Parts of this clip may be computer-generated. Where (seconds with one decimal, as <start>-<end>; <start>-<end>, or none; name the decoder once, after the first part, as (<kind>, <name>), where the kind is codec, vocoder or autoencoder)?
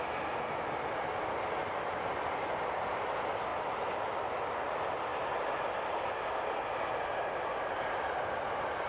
none